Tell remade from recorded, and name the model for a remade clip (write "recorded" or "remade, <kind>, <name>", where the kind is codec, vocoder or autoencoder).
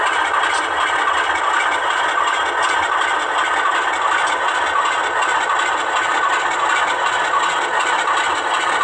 recorded